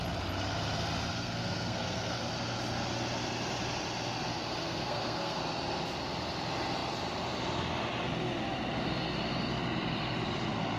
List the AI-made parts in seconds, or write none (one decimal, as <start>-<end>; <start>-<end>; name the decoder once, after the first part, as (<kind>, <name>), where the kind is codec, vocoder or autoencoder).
1.1-2.2 (codec, SNAC); 4.3-5.4